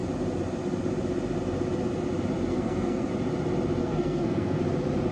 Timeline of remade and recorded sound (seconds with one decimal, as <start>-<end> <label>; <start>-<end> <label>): 0.0-2.5 recorded; 2.5-3.1 remade; 3.1-3.8 recorded; 3.8-4.6 remade; 4.6-5.1 recorded